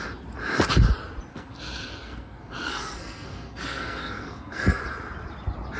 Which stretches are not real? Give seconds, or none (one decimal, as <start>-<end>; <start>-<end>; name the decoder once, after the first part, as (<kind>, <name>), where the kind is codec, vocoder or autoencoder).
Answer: 1.3-4.8 (codec, SNAC)